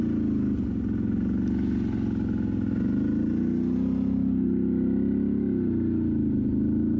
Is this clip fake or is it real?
real